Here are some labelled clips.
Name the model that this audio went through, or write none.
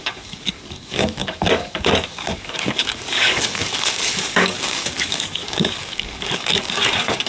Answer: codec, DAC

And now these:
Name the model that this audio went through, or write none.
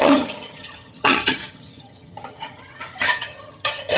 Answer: vocoder, HiFi-GAN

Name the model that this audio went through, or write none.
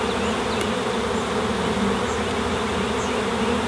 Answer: none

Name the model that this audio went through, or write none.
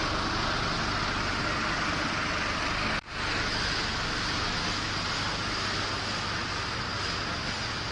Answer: none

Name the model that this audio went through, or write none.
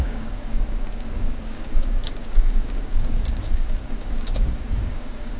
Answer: codec, DAC